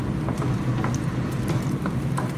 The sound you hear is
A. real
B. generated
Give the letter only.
A